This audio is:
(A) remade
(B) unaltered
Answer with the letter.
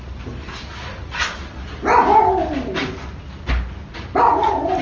B